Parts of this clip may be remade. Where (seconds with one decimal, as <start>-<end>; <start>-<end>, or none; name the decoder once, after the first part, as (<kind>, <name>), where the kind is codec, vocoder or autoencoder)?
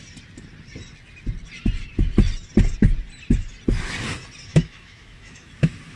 4.5-5.5 (autoencoder, DAC-VAE)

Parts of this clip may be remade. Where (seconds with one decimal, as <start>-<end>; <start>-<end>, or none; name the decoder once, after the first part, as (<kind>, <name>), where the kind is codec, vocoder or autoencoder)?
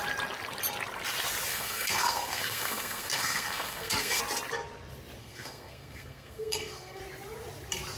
1.5-4.2 (codec, SNAC); 5.2-7.0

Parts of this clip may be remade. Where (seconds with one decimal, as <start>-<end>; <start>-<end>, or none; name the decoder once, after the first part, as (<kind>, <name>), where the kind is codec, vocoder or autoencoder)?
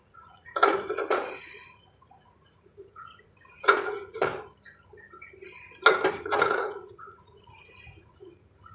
0.0-4.3 (vocoder, Vocos); 6.1-8.7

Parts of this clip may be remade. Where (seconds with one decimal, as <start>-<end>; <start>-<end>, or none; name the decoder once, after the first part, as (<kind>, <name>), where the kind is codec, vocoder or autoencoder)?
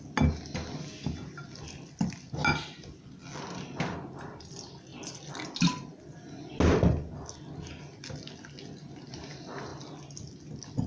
none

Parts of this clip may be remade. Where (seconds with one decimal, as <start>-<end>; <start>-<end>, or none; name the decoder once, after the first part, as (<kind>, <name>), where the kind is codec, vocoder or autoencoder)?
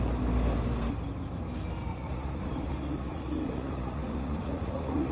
1.9-5.1 (vocoder, Vocos)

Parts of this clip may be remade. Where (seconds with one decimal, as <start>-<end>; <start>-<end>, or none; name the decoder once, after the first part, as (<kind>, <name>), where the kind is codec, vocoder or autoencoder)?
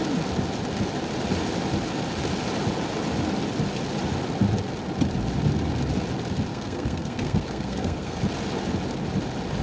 6.5-8.2 (codec, SNAC)